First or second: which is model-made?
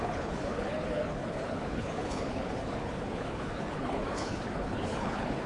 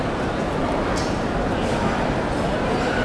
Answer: first